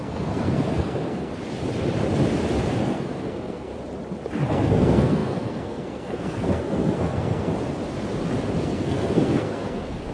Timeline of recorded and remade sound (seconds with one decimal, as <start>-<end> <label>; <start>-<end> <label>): 0.0-1.3 remade; 1.3-2.8 recorded; 2.8-3.7 remade; 3.7-4.5 recorded; 4.5-7.5 remade; 7.5-8.6 recorded; 8.6-10.1 remade